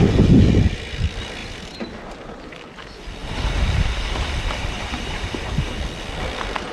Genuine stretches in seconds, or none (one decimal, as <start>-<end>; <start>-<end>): 0.0-1.4; 2.4-3.2; 5.8-6.7